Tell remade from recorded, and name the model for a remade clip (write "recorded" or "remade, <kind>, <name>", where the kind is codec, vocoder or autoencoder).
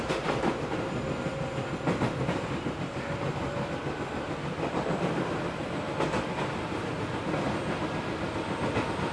recorded